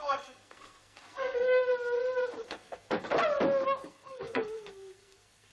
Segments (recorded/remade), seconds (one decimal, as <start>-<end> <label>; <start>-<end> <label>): 0.0-1.7 remade; 1.7-2.4 recorded; 2.4-3.1 remade; 3.1-3.8 recorded; 3.8-5.5 remade